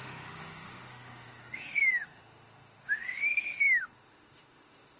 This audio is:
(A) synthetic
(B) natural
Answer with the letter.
A